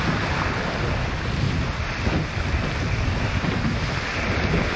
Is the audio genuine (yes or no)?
yes